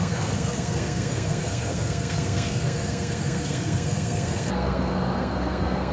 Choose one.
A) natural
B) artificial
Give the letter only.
B